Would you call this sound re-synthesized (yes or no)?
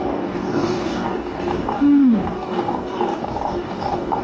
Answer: yes